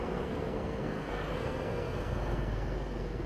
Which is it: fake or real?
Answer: fake